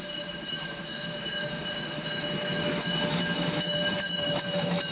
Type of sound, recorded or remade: remade